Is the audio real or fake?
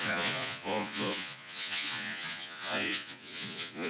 fake